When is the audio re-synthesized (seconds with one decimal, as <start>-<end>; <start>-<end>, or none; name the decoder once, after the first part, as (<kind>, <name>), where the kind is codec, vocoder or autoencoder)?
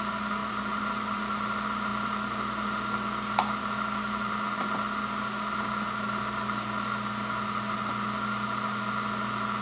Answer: 0.4-1.2 (vocoder, BigVGAN v2)